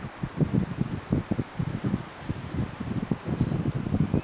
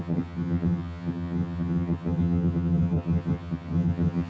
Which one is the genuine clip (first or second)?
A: first